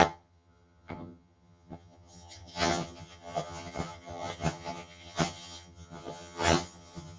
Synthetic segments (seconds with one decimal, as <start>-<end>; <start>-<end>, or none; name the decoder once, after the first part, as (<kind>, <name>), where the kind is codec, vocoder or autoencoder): 0.0-7.2 (vocoder, HiFi-GAN)